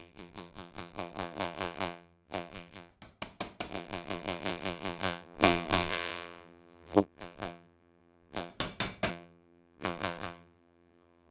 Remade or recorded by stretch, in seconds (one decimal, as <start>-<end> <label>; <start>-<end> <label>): 0.0-2.9 remade; 2.9-3.7 recorded; 3.7-8.5 remade; 8.5-9.1 recorded; 9.1-11.3 remade